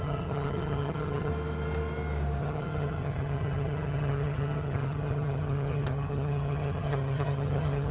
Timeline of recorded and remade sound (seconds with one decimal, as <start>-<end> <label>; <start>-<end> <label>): 0.0-1.3 remade; 1.3-2.4 recorded; 2.4-7.9 remade